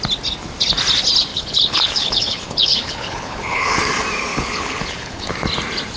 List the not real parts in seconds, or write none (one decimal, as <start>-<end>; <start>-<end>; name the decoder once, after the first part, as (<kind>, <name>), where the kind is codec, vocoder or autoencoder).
1.3-3.8 (codec, HILCodec); 4.3-5.3